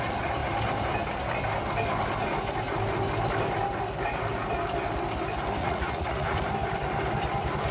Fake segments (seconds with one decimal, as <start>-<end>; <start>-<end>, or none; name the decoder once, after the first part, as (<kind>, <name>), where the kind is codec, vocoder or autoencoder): 5.6-6.4 (vocoder, Vocos)